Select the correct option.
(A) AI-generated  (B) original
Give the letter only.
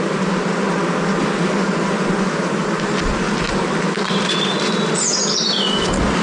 B